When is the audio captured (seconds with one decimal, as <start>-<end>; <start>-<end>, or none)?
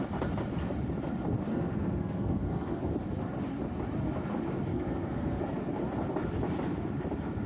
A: 0.0-1.5; 2.9-4.7; 5.4-7.5